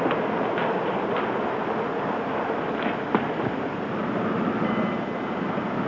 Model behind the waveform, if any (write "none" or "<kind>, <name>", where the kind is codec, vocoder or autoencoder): none